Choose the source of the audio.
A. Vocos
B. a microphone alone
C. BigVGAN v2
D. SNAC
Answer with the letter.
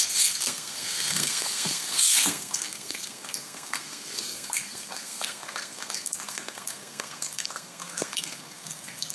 D